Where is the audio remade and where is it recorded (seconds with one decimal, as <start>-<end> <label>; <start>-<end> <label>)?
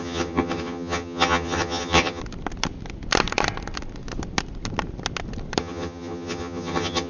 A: 0.0-2.2 remade; 2.2-5.6 recorded; 5.6-7.1 remade